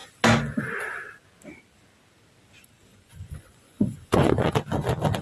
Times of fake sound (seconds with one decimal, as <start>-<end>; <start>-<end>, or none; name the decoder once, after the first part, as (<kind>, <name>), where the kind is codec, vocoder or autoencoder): 2.9-4.5 (vocoder, Vocos)